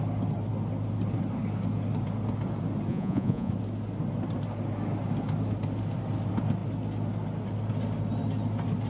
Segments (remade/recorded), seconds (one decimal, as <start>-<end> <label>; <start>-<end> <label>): 0.0-2.9 recorded; 2.9-3.5 remade; 3.5-8.9 recorded